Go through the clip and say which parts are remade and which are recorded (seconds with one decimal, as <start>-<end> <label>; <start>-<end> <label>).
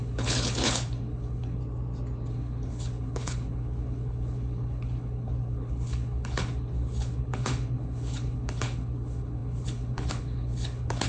0.0-1.6 remade; 1.6-2.3 recorded; 2.3-11.1 remade